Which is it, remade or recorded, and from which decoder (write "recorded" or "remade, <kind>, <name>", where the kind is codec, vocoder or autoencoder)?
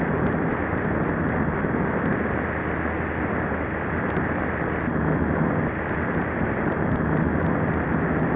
recorded